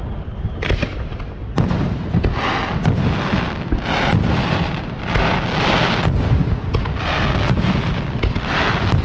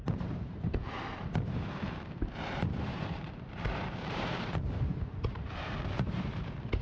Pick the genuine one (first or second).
first